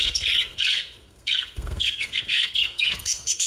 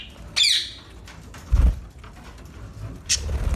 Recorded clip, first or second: second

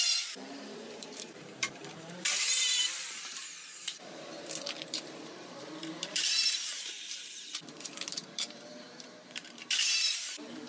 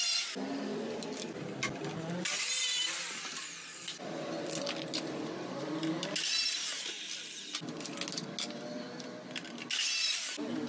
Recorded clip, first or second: second